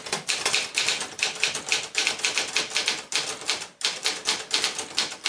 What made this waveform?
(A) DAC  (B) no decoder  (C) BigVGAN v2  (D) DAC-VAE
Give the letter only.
B